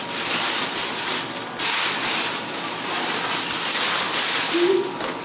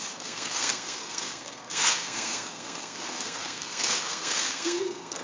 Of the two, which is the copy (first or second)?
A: second